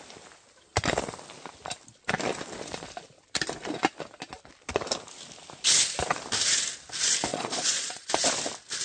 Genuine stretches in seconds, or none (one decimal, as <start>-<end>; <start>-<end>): 0.0-7.3; 8.1-8.8